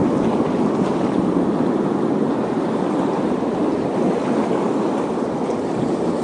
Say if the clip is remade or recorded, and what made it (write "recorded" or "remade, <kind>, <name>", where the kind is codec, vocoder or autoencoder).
recorded